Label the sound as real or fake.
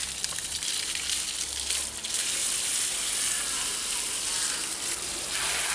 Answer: real